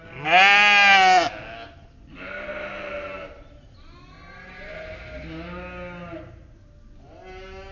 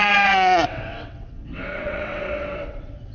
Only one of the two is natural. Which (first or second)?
first